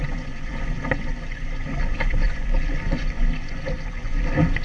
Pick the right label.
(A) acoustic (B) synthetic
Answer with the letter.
B